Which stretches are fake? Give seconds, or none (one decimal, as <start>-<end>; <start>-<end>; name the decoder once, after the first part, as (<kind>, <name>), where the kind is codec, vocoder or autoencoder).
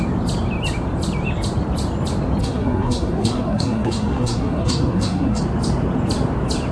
2.4-5.4 (codec, SNAC)